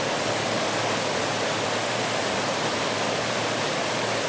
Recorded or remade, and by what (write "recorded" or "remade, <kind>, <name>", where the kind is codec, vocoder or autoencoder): recorded